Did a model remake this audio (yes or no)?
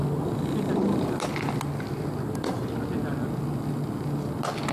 no